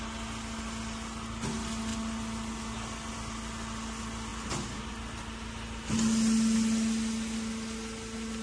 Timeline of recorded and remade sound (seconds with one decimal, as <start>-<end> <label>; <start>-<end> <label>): 0.0-8.4 recorded